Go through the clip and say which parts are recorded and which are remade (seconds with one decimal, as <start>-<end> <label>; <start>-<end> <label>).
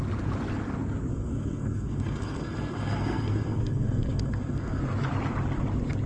0.0-1.1 recorded; 1.1-4.8 remade; 4.8-6.1 recorded